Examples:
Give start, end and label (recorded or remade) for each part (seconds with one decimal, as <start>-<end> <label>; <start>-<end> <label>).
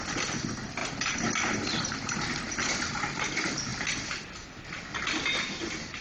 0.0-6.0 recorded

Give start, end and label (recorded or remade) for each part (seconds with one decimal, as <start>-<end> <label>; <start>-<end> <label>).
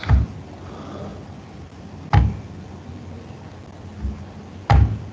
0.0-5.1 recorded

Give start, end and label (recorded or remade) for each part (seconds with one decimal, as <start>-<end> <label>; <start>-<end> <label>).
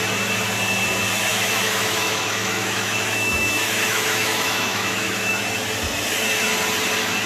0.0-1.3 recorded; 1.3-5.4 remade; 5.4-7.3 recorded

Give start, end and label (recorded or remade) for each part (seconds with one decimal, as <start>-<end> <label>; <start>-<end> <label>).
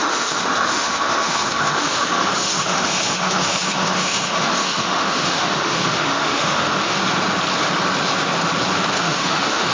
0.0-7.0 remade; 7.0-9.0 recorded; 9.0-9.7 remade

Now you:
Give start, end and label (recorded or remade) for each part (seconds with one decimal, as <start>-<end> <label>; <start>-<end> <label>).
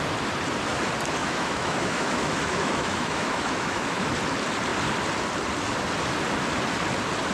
0.0-1.2 recorded; 1.2-4.1 remade; 4.1-7.3 recorded